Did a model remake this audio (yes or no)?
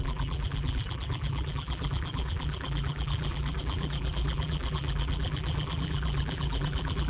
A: yes